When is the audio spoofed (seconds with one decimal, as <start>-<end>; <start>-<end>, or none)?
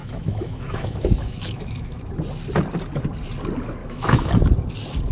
0.0-2.1; 3.8-4.3